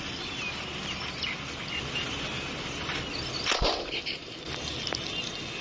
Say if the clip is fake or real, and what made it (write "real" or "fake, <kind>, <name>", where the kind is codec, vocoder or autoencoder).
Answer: real